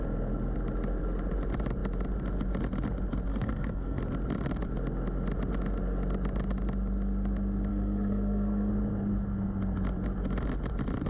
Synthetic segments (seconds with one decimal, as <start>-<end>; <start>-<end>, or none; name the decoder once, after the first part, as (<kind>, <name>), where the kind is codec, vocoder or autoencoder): 3.3-4.0 (codec, SNAC); 7.7-8.7